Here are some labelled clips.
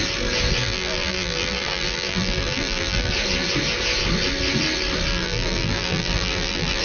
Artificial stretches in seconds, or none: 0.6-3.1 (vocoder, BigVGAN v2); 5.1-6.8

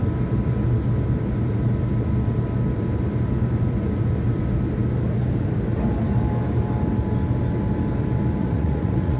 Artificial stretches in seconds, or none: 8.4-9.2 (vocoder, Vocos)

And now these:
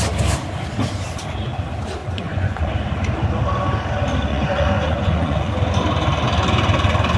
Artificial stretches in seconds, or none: 2.0-2.7 (vocoder, Vocos); 4.3-5.5

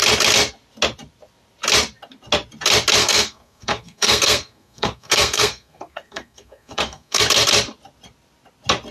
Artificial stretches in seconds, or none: 3.0-7.2 (codec, SNAC)

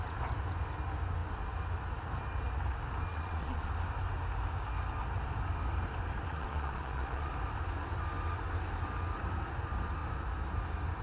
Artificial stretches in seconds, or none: 3.1-3.7 (vocoder, Vocos); 6.3-7.3

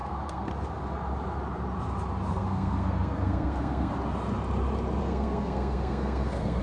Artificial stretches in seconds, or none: 0.0-0.5 (codec, SNAC); 2.3-3.9; 5.0-6.6

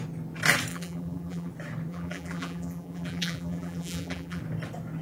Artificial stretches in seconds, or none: 0.7-1.5 (vocoder, BigVGAN v2); 1.9-4.4